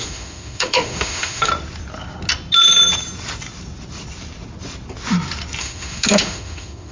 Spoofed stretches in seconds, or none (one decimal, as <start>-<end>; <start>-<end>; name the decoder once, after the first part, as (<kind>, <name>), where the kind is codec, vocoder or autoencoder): 0.0-1.5 (autoencoder, DAC-VAE); 5.6-6.9